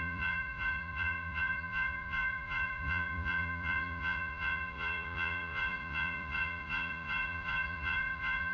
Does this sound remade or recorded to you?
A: remade